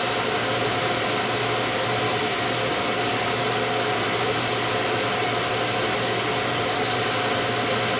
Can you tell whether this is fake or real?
real